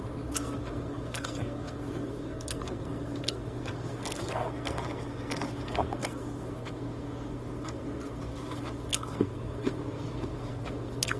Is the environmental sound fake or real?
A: fake